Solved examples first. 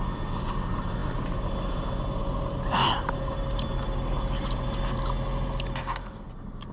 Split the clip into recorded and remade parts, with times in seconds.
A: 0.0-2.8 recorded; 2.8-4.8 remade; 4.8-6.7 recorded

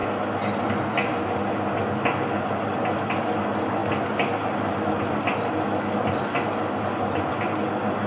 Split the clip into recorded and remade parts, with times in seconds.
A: 0.0-8.1 recorded

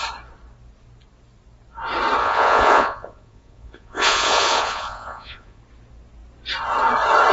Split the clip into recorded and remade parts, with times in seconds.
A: 0.0-2.2 recorded; 2.2-5.6 remade; 5.6-7.3 recorded

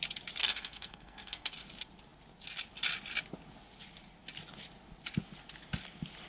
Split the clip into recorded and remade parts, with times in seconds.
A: 0.0-0.4 recorded; 0.4-1.5 remade; 1.5-6.3 recorded

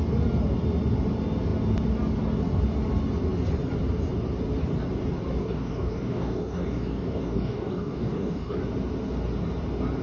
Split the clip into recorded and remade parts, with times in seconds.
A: 0.0-5.4 recorded; 5.4-8.6 remade; 8.6-10.0 recorded